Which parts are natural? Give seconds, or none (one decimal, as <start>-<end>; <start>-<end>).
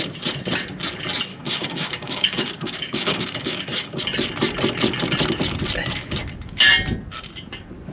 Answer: 0.0-1.3; 4.0-7.9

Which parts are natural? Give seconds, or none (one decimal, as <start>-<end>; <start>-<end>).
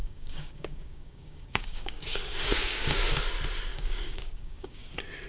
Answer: 3.2-3.7; 4.8-5.3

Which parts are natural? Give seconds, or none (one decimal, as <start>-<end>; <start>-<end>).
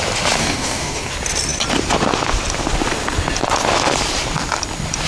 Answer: 0.0-0.4; 1.1-5.1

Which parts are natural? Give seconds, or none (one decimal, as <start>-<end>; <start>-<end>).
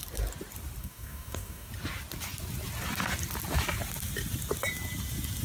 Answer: 0.0-0.8; 1.7-5.4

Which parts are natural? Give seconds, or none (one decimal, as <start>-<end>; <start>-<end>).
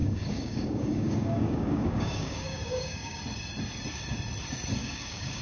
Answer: 3.2-4.8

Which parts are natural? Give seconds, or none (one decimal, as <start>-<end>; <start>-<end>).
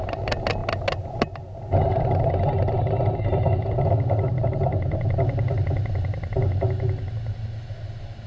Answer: 0.0-8.3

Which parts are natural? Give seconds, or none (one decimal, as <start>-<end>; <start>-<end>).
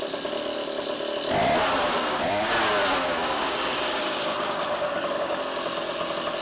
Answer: 0.0-2.0; 2.5-3.0; 5.4-6.4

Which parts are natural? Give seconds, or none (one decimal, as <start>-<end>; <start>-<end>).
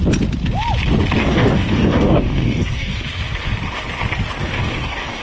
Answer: 0.0-1.2; 3.0-4.4